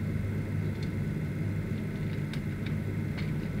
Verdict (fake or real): real